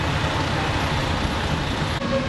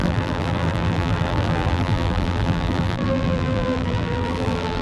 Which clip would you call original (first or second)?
first